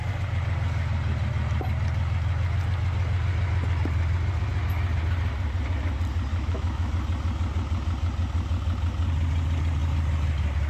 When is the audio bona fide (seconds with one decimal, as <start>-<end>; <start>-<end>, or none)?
0.0-6.3; 6.9-10.7